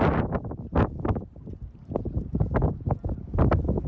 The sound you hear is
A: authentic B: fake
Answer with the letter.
A